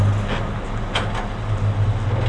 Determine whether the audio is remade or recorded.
recorded